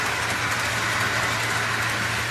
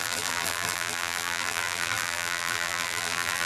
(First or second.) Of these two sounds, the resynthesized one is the second